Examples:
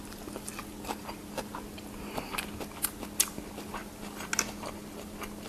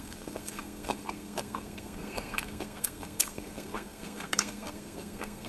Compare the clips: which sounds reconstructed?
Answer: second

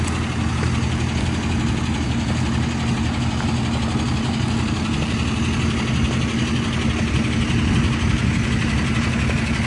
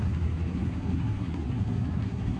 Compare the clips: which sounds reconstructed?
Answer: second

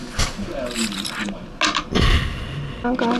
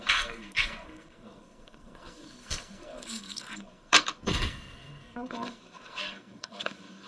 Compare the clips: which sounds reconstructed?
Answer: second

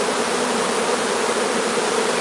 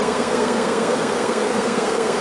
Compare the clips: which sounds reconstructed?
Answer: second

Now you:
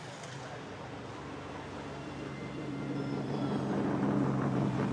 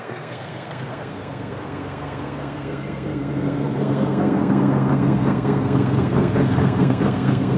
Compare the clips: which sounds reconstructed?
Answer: second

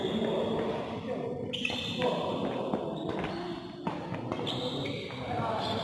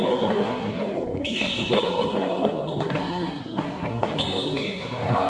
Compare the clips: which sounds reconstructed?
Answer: second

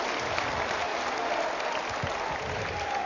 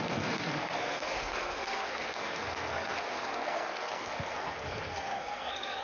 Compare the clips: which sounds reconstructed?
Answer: second